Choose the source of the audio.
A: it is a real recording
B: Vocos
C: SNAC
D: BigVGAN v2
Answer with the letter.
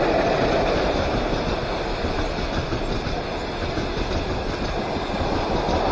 A